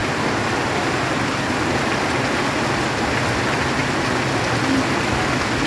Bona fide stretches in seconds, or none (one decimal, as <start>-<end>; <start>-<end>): 0.0-5.7